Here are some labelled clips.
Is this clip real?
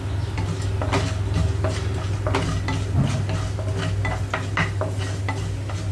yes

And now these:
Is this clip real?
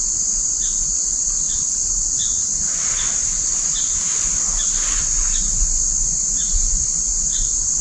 yes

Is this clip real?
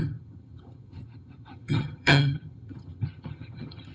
no